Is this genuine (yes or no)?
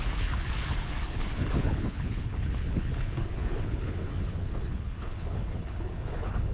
no